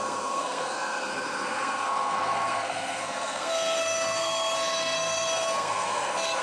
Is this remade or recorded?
remade